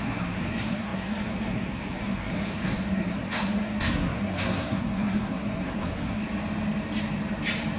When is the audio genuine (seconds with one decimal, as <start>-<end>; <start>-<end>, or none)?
6.2-7.8